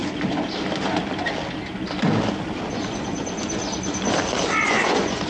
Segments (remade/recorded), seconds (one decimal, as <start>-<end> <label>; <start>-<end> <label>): 0.0-2.7 recorded; 2.7-3.6 remade; 3.6-4.6 recorded; 4.6-5.3 remade